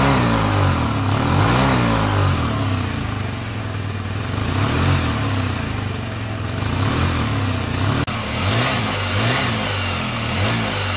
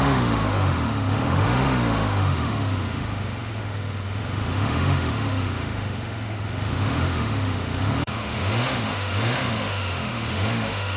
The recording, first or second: first